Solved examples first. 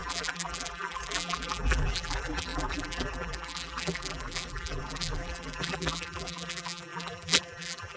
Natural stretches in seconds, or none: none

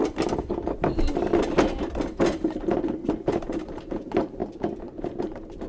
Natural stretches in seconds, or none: 0.0-3.4; 4.4-5.2

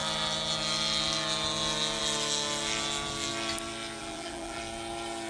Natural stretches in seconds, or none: 0.0-4.0; 4.6-5.3

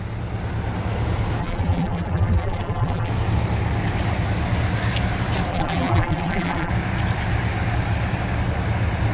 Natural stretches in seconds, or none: 0.0-1.4; 3.1-5.5; 6.7-9.1

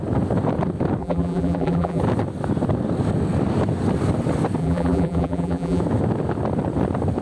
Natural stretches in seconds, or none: 0.0-1.0; 2.0-4.6; 5.8-7.2

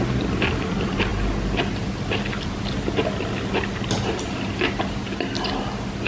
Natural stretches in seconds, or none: 0.0-6.1